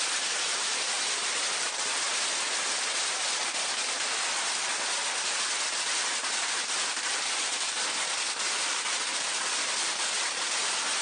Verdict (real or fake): real